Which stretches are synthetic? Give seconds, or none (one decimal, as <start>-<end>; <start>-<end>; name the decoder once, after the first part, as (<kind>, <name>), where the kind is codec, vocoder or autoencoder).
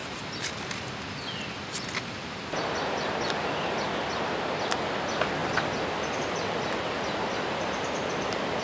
5.4-8.6 (vocoder, BigVGAN v2)